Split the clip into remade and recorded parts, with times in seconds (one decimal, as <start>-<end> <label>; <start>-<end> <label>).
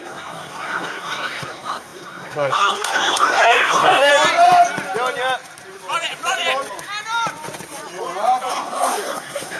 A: 0.0-4.1 remade; 4.1-8.5 recorded; 8.5-9.6 remade